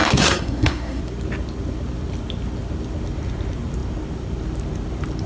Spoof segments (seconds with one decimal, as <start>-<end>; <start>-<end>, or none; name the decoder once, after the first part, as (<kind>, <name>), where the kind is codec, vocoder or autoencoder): 0.0-1.0 (codec, SNAC)